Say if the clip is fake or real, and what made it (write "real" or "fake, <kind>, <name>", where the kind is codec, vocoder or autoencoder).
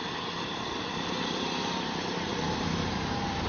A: fake, vocoder, BigVGAN v2